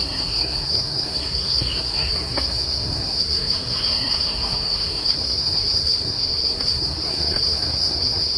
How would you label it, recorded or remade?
remade